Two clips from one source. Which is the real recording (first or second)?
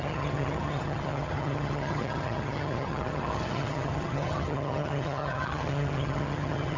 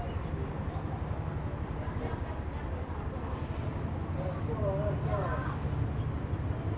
second